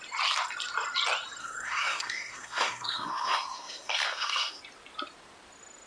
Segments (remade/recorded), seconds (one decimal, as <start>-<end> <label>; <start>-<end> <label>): 0.0-1.4 recorded; 1.4-4.6 remade; 4.6-5.9 recorded